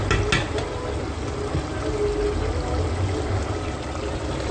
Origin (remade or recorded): recorded